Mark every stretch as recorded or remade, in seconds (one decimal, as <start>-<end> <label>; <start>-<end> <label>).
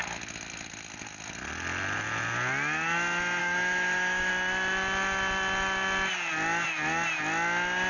0.0-3.4 recorded; 3.4-4.3 remade; 4.3-7.9 recorded